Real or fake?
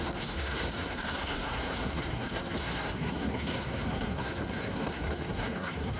fake